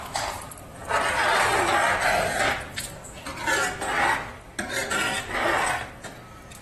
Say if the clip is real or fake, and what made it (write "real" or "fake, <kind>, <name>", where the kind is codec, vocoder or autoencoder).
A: real